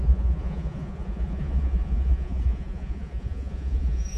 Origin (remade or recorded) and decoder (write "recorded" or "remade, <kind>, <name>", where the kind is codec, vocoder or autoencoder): remade, vocoder, Vocos